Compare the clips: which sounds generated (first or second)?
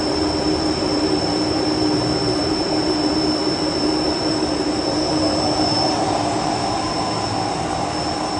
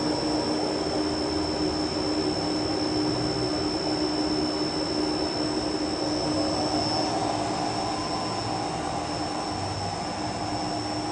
first